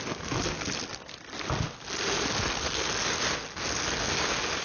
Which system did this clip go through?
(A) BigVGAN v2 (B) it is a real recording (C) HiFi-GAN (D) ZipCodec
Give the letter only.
B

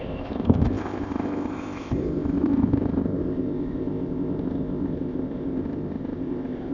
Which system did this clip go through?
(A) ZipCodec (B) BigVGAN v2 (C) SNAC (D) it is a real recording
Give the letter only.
A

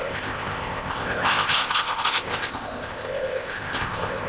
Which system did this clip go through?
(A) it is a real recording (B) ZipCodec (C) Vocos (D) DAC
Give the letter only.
B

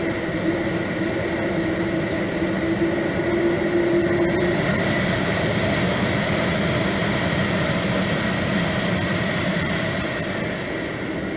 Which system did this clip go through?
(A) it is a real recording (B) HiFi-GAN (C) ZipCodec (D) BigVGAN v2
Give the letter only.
A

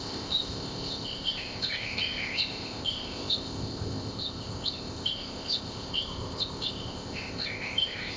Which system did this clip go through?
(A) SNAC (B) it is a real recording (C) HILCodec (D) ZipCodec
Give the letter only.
D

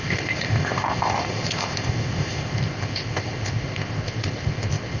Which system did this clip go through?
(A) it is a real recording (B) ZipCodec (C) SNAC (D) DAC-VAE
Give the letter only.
B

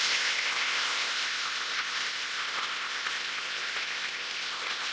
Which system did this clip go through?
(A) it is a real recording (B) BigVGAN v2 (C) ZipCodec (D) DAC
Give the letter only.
C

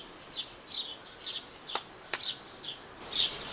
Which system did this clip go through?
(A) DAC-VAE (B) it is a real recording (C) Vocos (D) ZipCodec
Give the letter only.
B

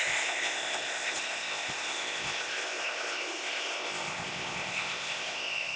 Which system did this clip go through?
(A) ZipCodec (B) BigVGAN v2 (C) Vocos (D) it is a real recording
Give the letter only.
A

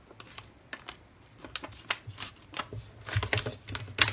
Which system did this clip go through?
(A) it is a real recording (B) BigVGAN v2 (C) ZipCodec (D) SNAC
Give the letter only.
A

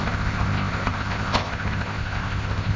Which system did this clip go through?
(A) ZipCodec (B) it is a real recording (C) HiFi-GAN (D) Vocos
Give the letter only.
A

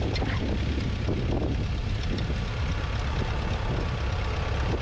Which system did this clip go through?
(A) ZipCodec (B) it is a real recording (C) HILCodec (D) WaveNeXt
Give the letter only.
B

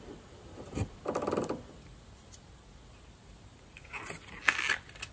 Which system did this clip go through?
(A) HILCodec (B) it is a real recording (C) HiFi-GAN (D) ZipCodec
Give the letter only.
B